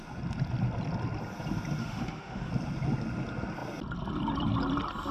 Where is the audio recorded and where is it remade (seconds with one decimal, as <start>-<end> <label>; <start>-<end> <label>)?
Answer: 0.0-1.8 recorded; 1.8-2.5 remade; 2.5-5.1 recorded